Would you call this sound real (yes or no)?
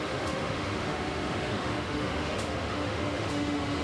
no